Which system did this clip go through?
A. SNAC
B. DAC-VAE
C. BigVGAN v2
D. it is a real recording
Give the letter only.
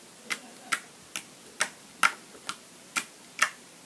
D